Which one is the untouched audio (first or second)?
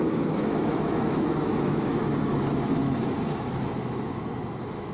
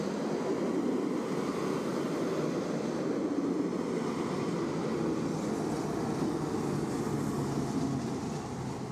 second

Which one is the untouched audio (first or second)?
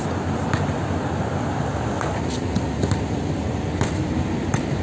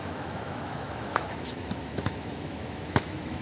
first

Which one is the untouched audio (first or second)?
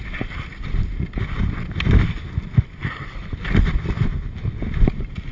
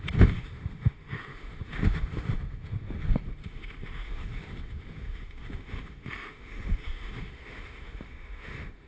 first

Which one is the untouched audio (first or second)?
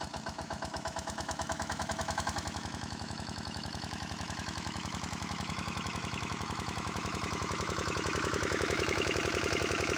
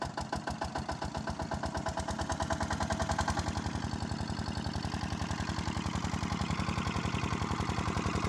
second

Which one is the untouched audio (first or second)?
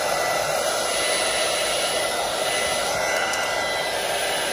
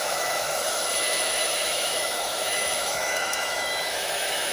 first